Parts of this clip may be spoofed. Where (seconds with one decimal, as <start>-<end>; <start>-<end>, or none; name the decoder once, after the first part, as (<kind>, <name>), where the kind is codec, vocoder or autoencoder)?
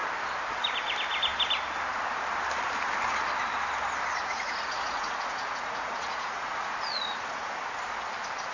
4.2-7.8 (vocoder, Vocos)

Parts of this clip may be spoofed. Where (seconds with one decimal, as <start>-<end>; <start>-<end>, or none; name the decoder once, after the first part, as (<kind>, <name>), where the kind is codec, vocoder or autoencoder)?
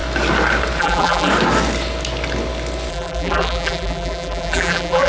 0.8-1.3 (vocoder, BigVGAN v2); 2.9-5.1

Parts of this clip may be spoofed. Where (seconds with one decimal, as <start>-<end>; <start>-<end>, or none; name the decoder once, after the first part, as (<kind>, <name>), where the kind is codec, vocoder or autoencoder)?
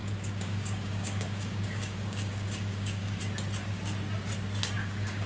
0.0-3.2 (codec, DAC); 4.8-5.3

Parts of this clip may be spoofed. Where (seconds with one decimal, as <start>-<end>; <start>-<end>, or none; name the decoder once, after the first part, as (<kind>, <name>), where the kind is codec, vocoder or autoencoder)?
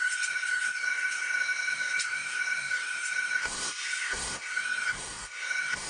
0.0-5.9 (codec, SNAC)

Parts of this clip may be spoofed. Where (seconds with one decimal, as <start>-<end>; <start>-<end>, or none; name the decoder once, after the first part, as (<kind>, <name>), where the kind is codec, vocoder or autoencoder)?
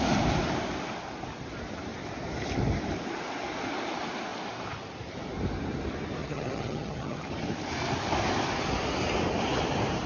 6.2-7.3 (vocoder, HiFi-GAN)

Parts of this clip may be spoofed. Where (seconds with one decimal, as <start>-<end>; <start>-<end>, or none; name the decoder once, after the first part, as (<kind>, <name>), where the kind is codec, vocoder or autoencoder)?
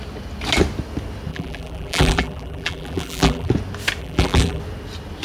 1.3-3.5 (vocoder, BigVGAN v2); 4.0-4.6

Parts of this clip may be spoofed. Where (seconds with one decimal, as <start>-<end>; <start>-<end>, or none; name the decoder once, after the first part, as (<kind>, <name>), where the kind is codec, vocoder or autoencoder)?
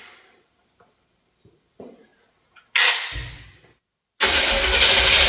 none